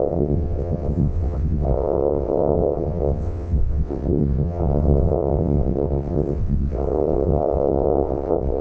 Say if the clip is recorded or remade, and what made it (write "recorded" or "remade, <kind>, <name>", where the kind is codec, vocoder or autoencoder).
remade, vocoder, WaveNeXt